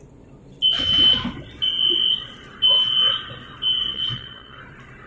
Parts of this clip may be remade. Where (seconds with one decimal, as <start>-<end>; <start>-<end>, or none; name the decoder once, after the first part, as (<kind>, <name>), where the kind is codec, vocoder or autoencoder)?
3.9-4.6 (vocoder, WaveNeXt)